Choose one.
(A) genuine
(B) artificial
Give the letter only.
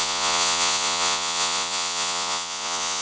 B